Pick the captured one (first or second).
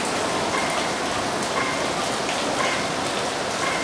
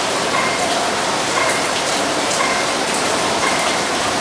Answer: first